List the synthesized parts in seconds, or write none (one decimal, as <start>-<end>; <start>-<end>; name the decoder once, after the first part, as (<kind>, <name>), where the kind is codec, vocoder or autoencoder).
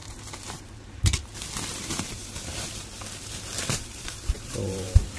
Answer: 0.6-1.2 (vocoder, BigVGAN v2); 1.8-2.2; 3.6-5.2